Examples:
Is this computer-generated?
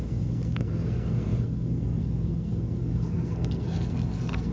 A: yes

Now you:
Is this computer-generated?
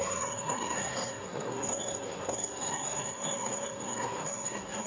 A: yes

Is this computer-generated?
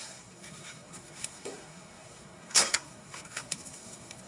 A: yes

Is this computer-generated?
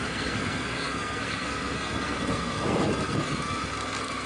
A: yes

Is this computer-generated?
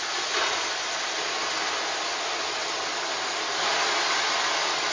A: no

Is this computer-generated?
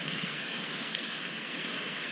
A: yes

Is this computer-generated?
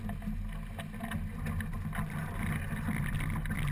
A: no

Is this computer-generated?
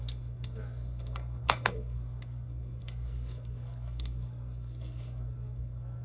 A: yes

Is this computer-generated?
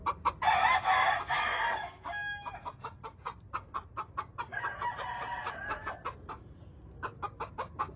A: no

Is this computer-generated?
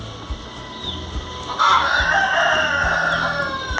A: no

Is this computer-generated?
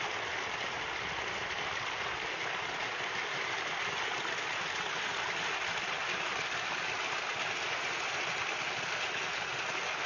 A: no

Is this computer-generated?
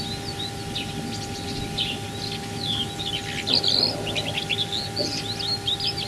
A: no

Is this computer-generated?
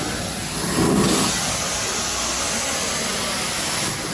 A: no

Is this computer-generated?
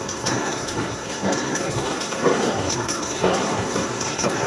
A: yes